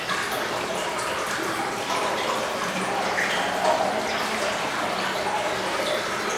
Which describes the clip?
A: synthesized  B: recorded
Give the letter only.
B